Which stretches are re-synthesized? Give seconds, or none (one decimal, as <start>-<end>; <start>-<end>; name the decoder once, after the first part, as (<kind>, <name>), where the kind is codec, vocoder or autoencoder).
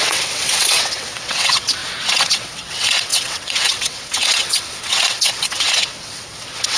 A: 0.0-6.8 (vocoder, WaveNeXt)